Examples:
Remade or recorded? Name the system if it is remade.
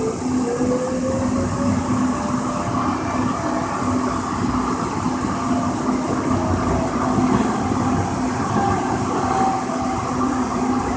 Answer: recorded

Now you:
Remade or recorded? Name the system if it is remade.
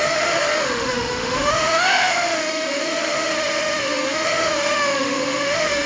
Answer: remade, autoencoder, DAC-VAE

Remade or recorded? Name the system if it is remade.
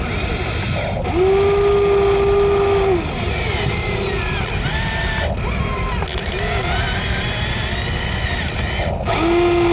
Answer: recorded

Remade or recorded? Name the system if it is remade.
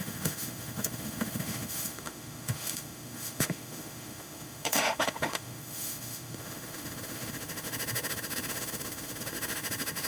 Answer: remade, autoencoder, DAC-VAE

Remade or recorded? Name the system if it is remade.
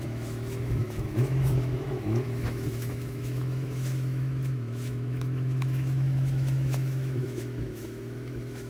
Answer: remade, autoencoder, DAC-VAE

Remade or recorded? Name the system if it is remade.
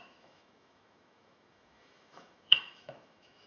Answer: remade, autoencoder, DAC-VAE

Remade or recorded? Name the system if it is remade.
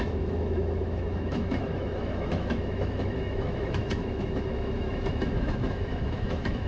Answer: remade, autoencoder, DAC-VAE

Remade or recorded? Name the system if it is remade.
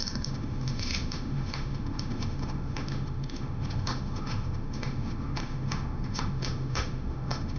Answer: remade, autoencoder, DAC-VAE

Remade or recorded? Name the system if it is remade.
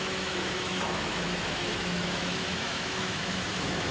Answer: remade, autoencoder, DAC-VAE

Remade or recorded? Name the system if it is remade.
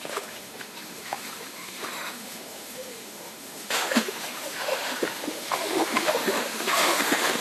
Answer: remade, autoencoder, DAC-VAE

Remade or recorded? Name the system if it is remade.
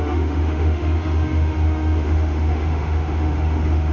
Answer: remade, autoencoder, DAC-VAE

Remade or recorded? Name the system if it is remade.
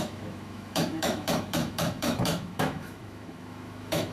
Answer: remade, autoencoder, DAC-VAE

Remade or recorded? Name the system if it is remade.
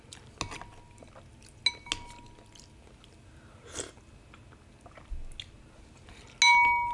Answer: recorded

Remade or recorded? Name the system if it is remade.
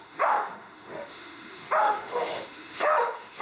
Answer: remade, autoencoder, DAC-VAE